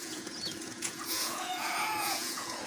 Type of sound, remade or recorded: remade